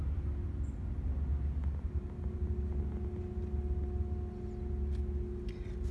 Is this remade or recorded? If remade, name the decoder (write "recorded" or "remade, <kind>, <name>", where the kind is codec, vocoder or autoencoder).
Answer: recorded